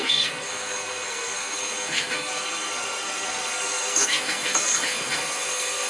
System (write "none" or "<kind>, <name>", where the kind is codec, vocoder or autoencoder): codec, SNAC